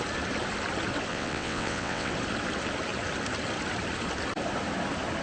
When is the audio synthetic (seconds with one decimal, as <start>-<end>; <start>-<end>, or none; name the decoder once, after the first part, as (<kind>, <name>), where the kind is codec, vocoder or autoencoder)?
1.1-2.1 (vocoder, WaveNeXt)

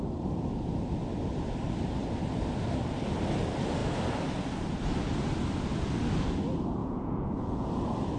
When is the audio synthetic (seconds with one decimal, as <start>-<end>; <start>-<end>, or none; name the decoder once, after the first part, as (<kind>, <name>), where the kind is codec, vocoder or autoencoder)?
6.8-7.7 (vocoder, Vocos)

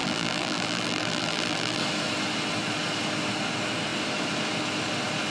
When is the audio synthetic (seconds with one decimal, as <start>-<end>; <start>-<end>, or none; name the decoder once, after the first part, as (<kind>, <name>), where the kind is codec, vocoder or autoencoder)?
0.0-1.8 (vocoder, BigVGAN v2)

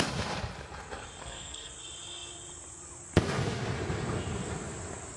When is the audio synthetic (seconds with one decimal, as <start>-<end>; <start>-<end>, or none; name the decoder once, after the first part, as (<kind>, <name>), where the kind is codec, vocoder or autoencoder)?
1.2-1.7 (codec, SNAC)